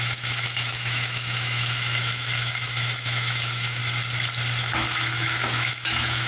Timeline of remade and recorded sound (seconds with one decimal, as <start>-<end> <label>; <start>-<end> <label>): 0.0-3.8 remade; 3.8-4.6 recorded; 4.6-6.3 remade